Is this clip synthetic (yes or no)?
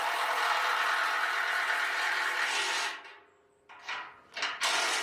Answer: no